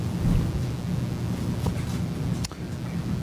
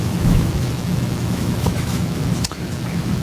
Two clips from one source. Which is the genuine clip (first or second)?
first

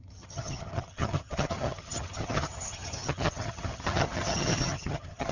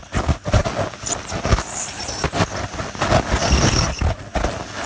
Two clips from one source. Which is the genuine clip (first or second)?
second